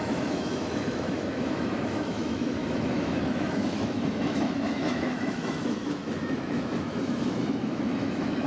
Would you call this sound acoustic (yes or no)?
no